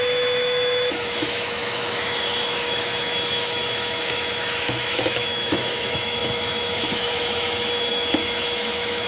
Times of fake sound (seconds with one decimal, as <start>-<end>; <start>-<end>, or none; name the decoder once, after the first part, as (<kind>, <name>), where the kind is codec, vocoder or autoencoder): 0.0-9.1 (autoencoder, DAC-VAE)